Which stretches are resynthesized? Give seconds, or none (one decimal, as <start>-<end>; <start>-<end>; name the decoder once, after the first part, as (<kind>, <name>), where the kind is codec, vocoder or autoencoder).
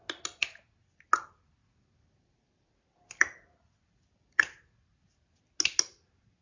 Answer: 1.6-4.4 (vocoder, BigVGAN v2)